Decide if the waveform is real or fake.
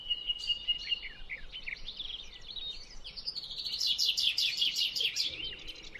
real